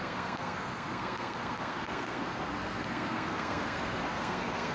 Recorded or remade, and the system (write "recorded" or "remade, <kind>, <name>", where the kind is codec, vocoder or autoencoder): remade, codec, SNAC